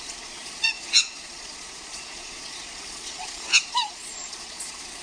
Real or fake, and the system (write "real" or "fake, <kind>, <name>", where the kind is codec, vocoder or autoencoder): fake, vocoder, Vocos